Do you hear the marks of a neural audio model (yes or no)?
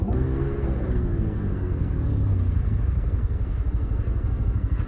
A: yes